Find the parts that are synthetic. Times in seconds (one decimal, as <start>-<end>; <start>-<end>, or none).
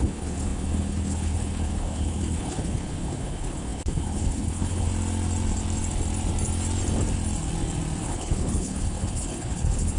0.0-4.9; 8.0-10.0